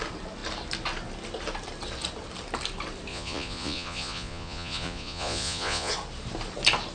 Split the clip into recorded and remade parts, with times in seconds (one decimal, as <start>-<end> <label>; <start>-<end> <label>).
0.0-3.1 recorded; 3.1-5.9 remade; 5.9-6.9 recorded